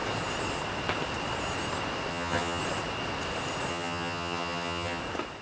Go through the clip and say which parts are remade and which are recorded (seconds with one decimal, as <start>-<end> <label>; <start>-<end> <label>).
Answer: 0.0-2.1 recorded; 2.1-2.6 remade; 2.6-3.7 recorded; 3.7-5.0 remade; 5.0-5.4 recorded